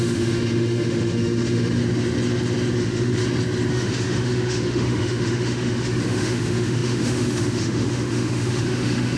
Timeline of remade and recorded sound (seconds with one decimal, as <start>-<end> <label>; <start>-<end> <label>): 0.0-1.8 remade; 1.8-2.8 recorded; 2.8-3.2 remade; 3.2-3.7 recorded; 3.7-9.2 remade